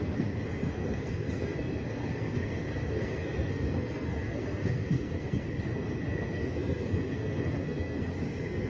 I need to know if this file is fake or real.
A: fake